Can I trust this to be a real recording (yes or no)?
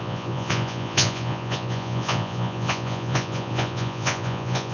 no